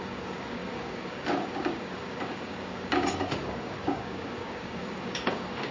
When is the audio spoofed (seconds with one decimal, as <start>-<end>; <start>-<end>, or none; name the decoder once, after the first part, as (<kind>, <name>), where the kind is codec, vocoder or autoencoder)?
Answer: 0.0-5.7 (codec, DAC)